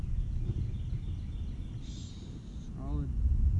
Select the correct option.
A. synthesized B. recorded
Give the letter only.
B